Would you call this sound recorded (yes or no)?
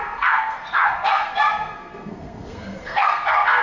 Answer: no